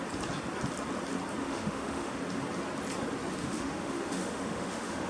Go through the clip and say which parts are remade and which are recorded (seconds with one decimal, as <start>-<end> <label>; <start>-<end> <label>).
0.0-1.4 recorded; 1.4-2.2 remade; 2.2-3.4 recorded; 3.4-5.1 remade